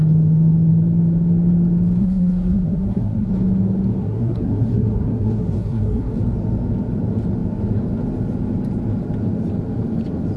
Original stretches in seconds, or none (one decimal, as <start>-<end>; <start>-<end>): 0.0-2.0; 3.3-4.0; 6.1-10.4